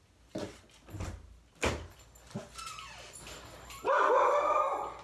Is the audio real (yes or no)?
yes